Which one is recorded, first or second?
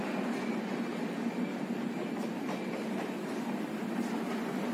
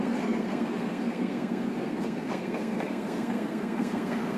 first